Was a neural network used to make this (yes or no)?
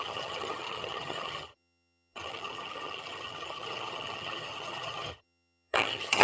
yes